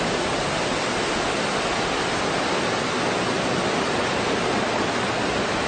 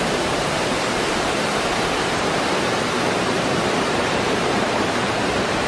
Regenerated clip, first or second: second